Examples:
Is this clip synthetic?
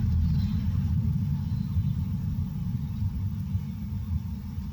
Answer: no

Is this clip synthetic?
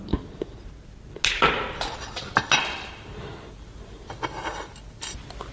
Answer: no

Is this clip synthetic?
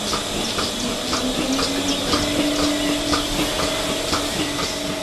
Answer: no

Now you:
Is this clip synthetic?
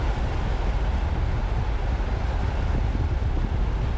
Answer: no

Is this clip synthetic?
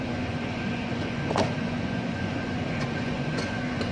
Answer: yes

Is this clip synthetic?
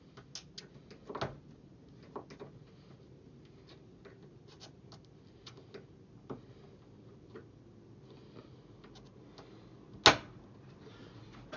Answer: no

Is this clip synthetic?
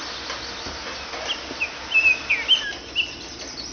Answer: no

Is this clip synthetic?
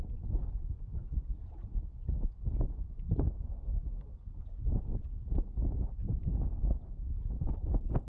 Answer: no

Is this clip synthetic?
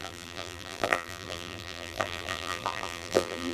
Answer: yes